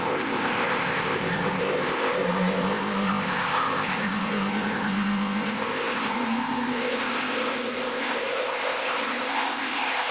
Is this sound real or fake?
fake